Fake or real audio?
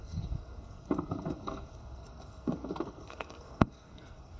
fake